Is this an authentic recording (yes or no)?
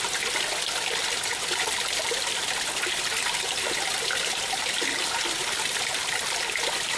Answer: yes